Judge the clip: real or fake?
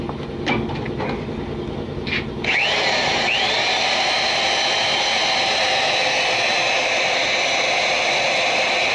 real